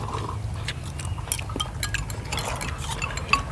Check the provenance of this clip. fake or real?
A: real